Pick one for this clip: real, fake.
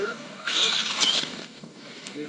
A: fake